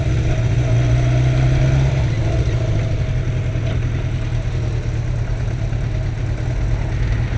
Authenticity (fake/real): real